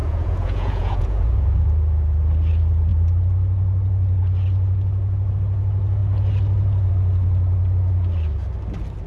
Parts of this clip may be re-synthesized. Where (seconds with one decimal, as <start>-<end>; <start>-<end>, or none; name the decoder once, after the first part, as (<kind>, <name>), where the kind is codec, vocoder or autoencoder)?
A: 0.0-1.7 (vocoder, Vocos)